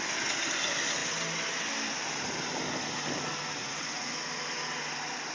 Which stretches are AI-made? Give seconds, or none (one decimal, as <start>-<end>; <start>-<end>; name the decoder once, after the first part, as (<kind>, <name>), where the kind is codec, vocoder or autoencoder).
3.6-4.1 (vocoder, Vocos)